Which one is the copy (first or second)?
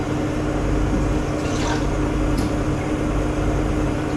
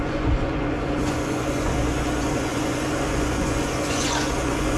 second